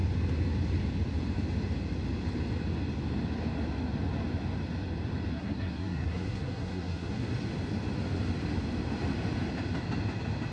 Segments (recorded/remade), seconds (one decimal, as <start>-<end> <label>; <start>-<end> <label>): 0.0-5.3 recorded; 5.3-7.3 remade; 7.3-10.5 recorded